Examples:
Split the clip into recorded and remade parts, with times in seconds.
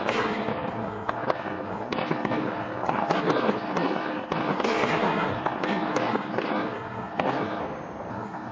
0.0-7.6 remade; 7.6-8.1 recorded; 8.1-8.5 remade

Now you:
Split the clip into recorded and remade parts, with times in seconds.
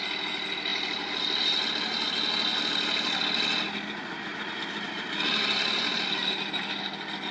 0.0-0.7 recorded; 0.7-1.7 remade; 1.7-2.5 recorded; 2.5-3.2 remade; 3.2-7.3 recorded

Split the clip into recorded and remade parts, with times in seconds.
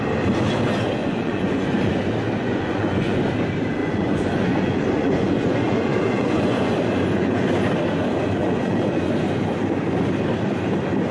0.0-1.0 recorded; 1.0-1.9 remade; 1.9-2.4 recorded; 2.4-3.2 remade; 3.2-3.8 recorded; 3.8-7.5 remade; 7.5-8.4 recorded; 8.4-9.1 remade; 9.1-11.1 recorded